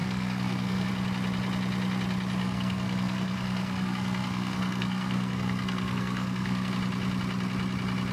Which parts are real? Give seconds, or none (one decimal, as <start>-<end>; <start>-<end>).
0.9-2.4; 6.7-8.1